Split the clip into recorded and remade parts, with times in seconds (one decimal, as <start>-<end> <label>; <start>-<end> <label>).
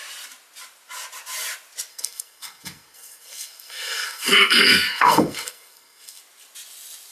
0.0-1.9 recorded; 1.9-6.2 remade; 6.2-7.1 recorded